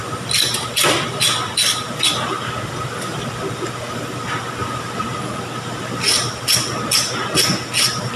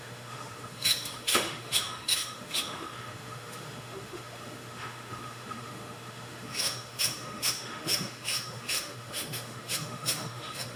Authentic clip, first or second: first